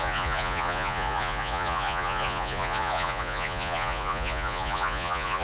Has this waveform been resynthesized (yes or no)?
yes